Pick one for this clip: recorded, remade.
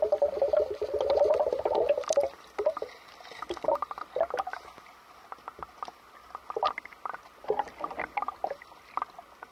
recorded